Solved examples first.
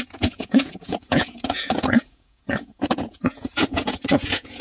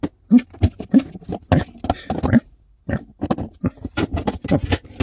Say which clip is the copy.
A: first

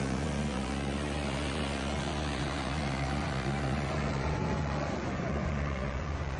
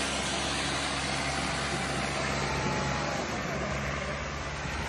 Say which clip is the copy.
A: first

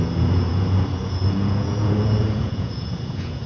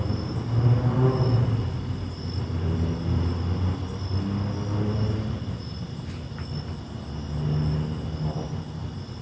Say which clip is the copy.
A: first